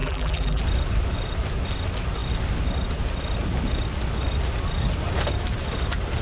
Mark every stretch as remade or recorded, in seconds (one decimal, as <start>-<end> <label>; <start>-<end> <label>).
0.0-0.6 remade; 0.6-6.2 recorded